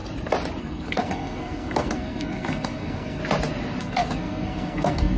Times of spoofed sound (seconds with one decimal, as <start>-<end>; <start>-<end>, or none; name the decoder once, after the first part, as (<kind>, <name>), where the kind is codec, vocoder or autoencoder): 0.6-3.2 (codec, SNAC); 3.8-5.2